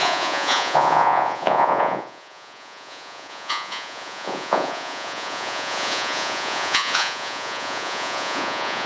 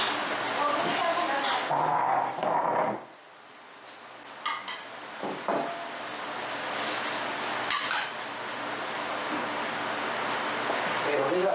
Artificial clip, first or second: first